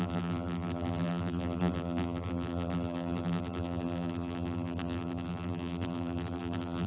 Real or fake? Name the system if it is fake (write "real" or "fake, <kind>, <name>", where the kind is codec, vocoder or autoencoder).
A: fake, vocoder, BigVGAN v2